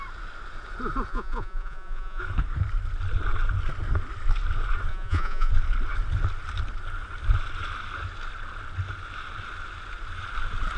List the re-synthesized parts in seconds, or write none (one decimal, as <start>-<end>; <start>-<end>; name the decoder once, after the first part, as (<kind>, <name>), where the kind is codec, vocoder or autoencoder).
1.1-2.2 (vocoder, Vocos); 4.9-5.5